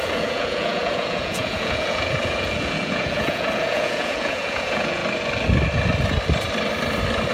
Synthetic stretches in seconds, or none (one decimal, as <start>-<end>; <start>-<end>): 0.0-5.0